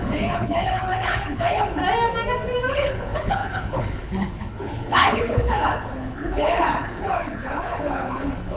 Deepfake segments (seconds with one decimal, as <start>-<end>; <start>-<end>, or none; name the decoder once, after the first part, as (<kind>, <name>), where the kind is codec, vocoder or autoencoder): 0.0-1.8 (codec, HILCodec); 2.7-8.6